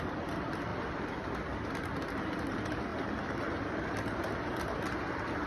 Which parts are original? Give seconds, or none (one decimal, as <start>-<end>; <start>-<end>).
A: 0.0-5.5